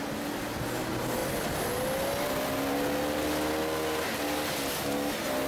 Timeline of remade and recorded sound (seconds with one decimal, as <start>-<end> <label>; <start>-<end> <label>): 0.0-5.5 recorded